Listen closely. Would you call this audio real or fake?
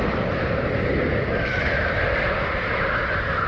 real